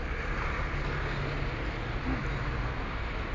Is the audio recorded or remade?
recorded